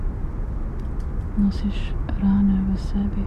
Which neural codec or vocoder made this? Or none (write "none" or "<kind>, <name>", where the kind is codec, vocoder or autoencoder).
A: none